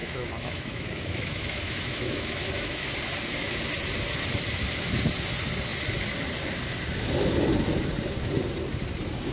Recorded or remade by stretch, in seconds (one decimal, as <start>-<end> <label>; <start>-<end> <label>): 0.0-2.9 remade; 2.9-9.3 recorded